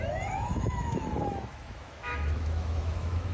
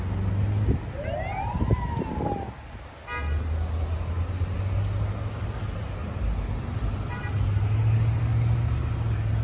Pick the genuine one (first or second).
second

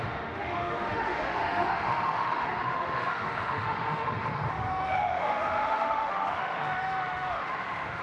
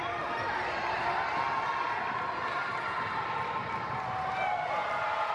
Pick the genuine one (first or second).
second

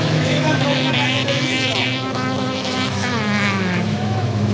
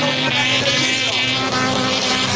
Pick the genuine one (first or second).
second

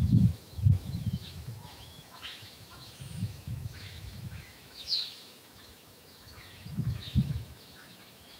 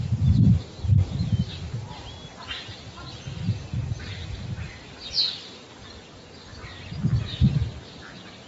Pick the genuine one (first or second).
second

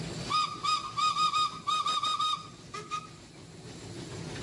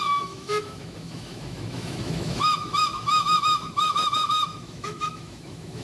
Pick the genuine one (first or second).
first